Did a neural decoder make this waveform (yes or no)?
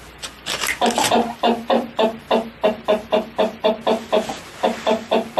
no